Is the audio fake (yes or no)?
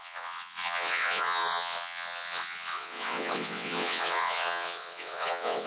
yes